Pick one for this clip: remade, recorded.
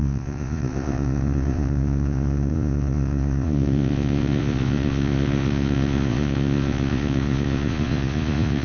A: remade